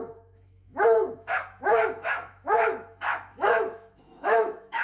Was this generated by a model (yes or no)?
yes